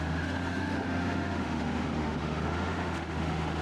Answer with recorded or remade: remade